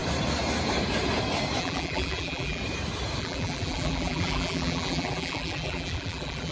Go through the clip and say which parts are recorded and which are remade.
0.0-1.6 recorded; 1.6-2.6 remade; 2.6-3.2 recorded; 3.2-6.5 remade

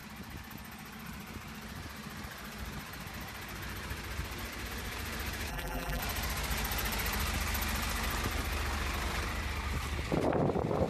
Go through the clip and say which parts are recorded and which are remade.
0.0-5.5 recorded; 5.5-6.0 remade; 6.0-10.9 recorded

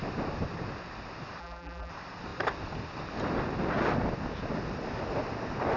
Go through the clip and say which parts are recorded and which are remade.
0.0-1.4 recorded; 1.4-1.9 remade; 1.9-5.8 recorded

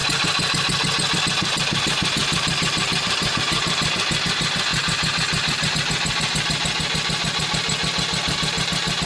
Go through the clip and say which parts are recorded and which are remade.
0.0-2.2 recorded; 2.2-3.9 remade; 3.9-4.7 recorded; 4.7-5.7 remade; 5.7-9.1 recorded

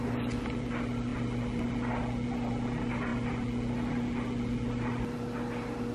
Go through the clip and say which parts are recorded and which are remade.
0.0-5.9 recorded